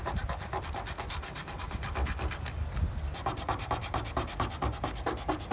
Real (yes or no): yes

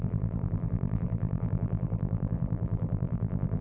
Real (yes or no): no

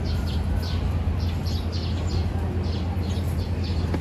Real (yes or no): yes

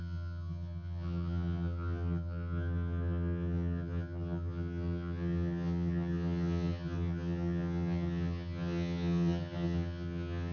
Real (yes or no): no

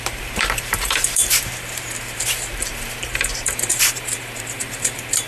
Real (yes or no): no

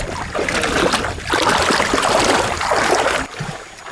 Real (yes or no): yes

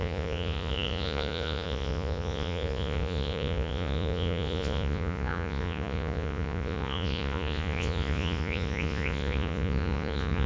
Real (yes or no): no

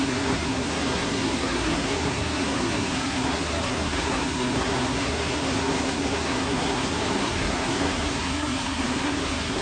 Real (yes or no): no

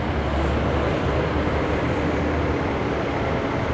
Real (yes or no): yes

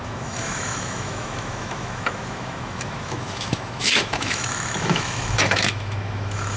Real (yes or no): no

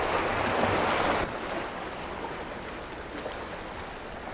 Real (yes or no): yes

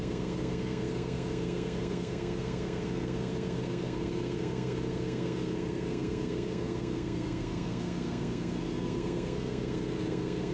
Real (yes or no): no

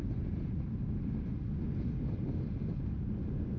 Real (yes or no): yes